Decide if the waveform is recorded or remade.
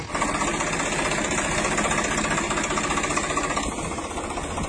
recorded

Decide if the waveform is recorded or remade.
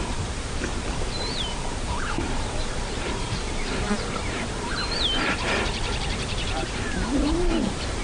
remade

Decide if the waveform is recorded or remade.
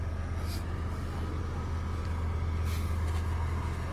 recorded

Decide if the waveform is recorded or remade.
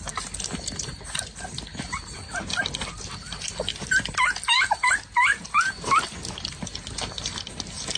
recorded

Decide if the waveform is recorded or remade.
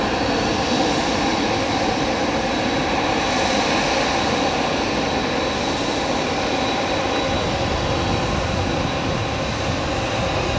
recorded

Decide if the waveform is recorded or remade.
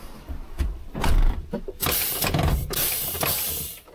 remade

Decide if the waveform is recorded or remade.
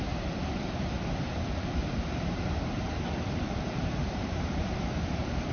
remade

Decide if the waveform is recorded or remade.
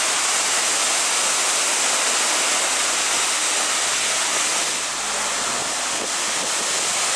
recorded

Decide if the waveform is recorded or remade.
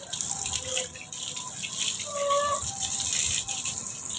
recorded